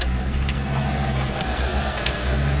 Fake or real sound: fake